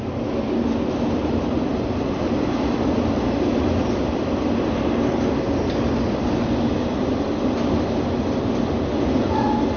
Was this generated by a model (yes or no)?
no